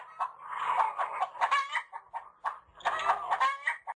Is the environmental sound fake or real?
real